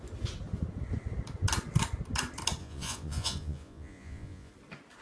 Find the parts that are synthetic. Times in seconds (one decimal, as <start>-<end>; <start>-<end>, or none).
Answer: 2.6-4.5